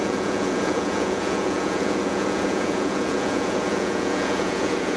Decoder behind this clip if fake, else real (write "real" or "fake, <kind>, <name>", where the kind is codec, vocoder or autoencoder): fake, vocoder, Vocos